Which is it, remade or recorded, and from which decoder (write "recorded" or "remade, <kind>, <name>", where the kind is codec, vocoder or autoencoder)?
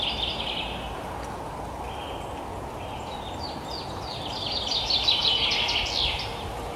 recorded